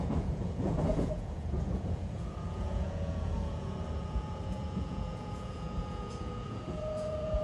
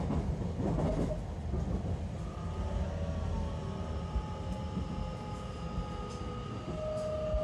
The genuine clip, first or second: second